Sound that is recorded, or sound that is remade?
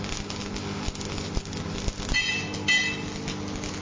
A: recorded